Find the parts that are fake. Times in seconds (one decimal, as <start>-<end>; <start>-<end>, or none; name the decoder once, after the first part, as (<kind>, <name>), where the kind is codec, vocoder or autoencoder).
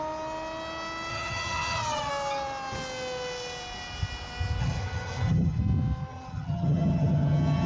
1.1-2.1 (vocoder, HiFi-GAN); 4.6-5.6; 6.1-7.7